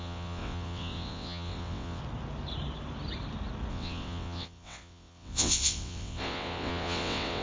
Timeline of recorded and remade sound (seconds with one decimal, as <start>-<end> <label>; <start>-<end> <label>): 0.0-2.0 remade; 2.0-3.7 recorded; 3.7-7.4 remade